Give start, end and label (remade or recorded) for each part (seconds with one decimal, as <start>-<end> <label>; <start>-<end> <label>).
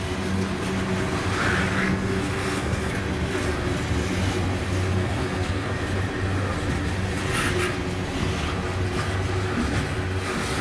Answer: 0.0-1.7 recorded; 1.7-2.9 remade; 2.9-4.9 recorded; 4.9-5.8 remade; 5.8-10.6 recorded